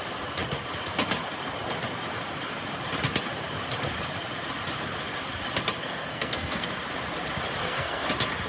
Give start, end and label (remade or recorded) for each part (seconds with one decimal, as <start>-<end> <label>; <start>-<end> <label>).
0.0-5.8 recorded; 5.8-6.7 remade; 6.7-7.6 recorded; 7.6-8.1 remade; 8.1-8.5 recorded